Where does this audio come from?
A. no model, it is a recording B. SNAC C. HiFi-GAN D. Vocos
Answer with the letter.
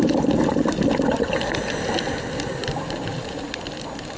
A